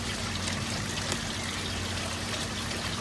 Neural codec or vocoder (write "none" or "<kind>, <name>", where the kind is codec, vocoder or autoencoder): none